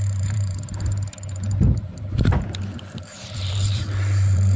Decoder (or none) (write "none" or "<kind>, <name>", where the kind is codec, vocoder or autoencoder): vocoder, BigVGAN v2